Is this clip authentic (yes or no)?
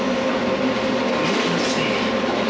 yes